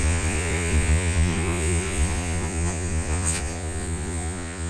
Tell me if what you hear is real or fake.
fake